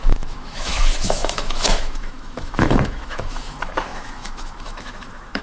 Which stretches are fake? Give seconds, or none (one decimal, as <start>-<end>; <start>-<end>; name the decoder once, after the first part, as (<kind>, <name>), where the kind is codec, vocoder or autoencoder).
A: 0.0-5.4 (autoencoder, DAC-VAE)